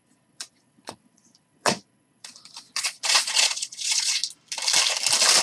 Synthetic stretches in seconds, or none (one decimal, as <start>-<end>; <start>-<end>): 0.0-4.2